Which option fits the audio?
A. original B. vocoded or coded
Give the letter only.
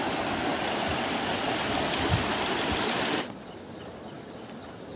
A